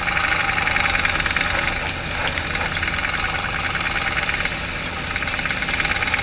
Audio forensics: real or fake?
real